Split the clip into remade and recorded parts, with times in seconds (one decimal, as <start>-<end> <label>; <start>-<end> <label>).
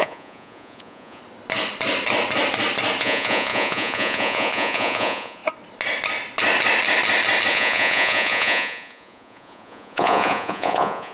0.0-1.2 remade; 1.2-3.0 recorded; 3.0-5.4 remade; 5.4-7.5 recorded; 7.5-11.1 remade